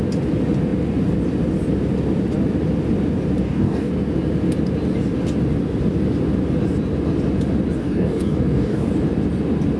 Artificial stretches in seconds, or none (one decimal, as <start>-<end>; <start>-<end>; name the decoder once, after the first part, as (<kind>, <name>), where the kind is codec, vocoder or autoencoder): 3.4-3.9 (codec, DAC); 7.8-8.9